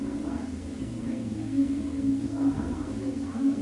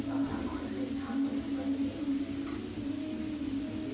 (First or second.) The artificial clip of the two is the first